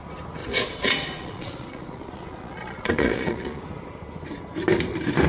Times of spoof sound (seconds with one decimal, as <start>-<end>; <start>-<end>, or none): 0.4-3.6